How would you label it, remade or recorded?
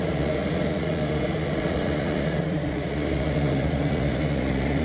remade